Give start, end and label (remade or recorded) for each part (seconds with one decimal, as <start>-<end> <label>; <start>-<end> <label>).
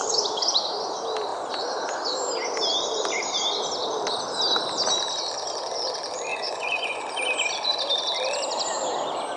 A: 0.0-6.3 recorded; 6.3-7.0 remade; 7.0-9.4 recorded